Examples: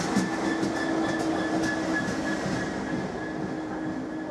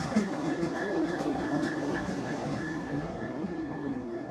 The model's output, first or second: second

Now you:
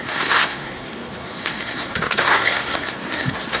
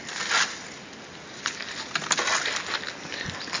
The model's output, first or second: first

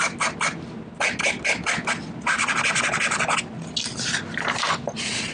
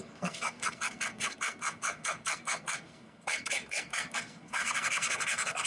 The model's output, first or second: second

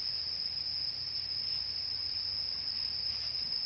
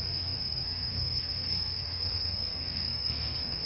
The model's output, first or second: second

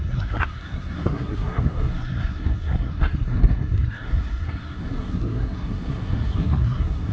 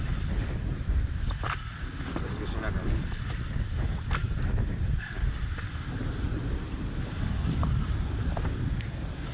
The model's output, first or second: first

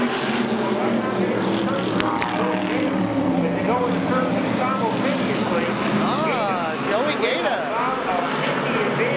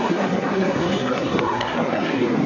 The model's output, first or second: second